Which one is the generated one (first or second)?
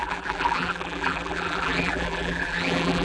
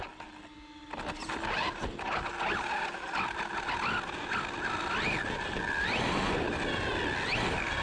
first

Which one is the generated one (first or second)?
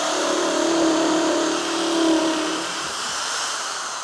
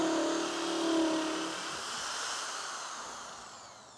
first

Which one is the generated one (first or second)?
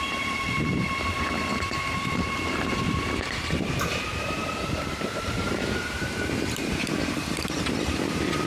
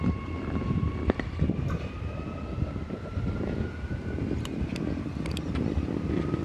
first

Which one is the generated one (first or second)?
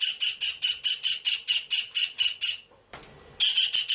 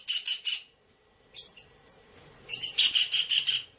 second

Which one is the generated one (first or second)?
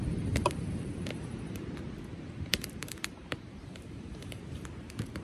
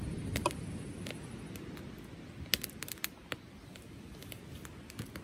first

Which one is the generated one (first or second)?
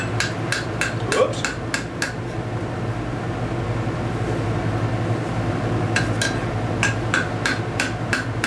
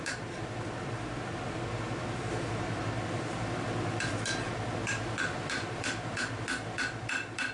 second